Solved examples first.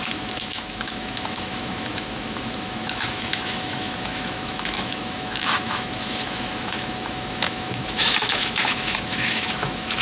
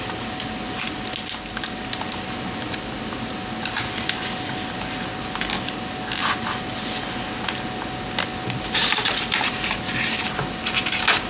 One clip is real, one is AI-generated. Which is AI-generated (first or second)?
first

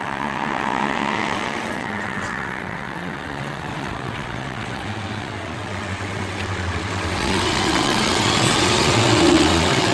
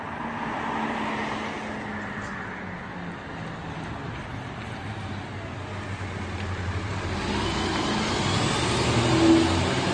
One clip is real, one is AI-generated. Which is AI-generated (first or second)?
first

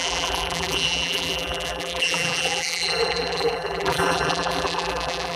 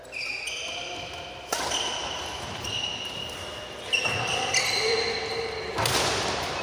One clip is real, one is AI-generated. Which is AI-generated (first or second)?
first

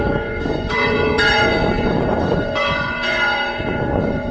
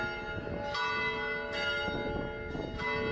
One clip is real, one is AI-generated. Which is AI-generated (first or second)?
first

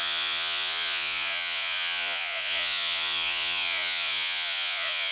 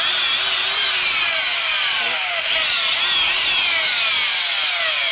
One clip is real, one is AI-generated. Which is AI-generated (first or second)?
first